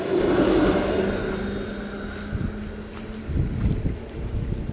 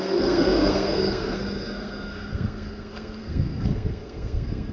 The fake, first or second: second